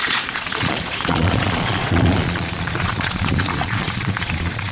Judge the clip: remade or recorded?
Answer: remade